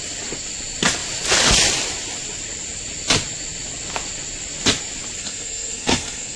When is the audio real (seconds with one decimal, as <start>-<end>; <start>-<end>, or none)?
0.0-5.2